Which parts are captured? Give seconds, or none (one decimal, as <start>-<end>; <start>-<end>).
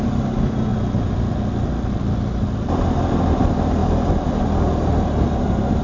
0.0-5.8